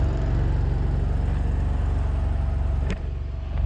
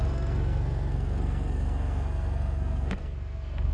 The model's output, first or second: second